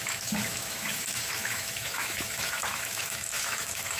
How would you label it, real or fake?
fake